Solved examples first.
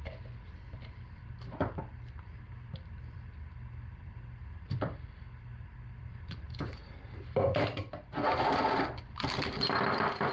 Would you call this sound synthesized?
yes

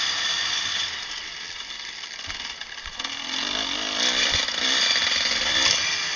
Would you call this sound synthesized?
no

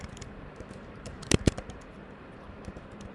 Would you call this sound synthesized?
yes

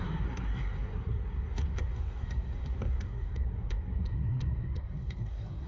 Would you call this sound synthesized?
yes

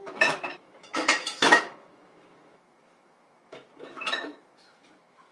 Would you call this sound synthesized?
yes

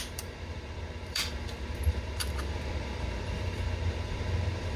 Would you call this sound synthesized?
yes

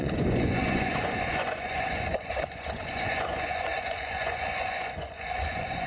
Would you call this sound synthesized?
yes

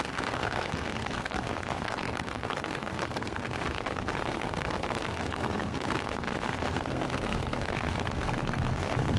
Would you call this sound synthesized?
yes